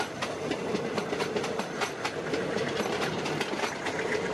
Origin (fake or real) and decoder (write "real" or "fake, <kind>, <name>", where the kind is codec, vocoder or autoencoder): real